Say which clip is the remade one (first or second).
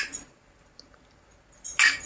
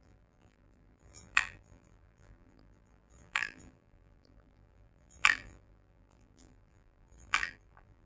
second